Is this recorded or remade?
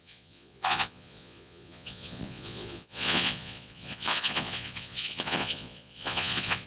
remade